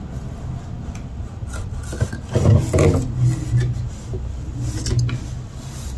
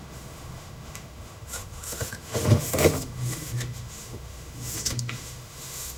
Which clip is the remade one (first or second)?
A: second